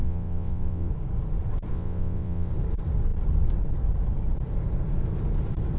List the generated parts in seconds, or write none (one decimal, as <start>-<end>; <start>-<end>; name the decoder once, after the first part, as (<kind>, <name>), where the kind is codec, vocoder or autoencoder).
0.0-0.9 (vocoder, WaveNeXt); 1.7-2.5